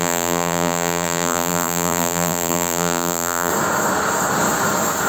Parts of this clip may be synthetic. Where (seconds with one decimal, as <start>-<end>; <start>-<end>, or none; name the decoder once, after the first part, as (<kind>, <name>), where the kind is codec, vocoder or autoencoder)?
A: 0.0-3.5 (vocoder, BigVGAN v2)